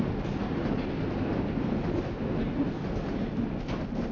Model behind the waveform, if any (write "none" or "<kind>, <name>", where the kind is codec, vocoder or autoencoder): none